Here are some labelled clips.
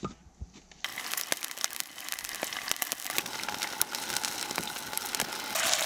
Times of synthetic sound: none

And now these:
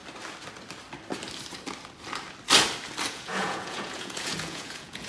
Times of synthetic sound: 3.1-5.1 (vocoder, Vocos)

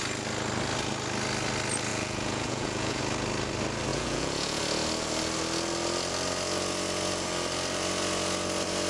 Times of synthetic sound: 1.9-3.0 (vocoder, Vocos); 3.9-4.6

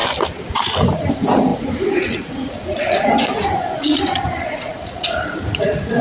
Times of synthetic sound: 1.1-6.0 (vocoder, Vocos)

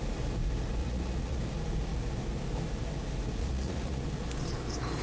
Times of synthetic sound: 0.8-1.4 (vocoder, Vocos); 3.4-4.0